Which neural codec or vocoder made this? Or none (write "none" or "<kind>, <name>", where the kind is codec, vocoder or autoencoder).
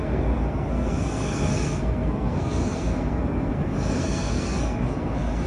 codec, SNAC